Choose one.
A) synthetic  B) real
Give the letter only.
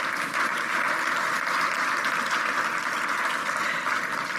B